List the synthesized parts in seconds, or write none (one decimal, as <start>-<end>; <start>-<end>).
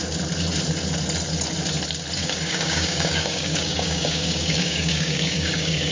2.2-5.9